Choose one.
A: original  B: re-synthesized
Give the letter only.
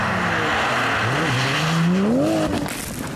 A